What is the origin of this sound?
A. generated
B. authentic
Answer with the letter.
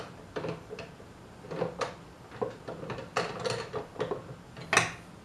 B